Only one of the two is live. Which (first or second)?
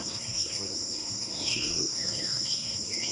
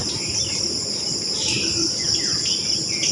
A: second